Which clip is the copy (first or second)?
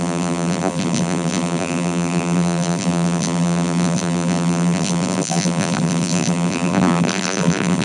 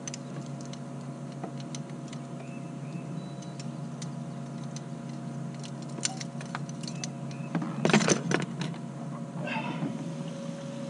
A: first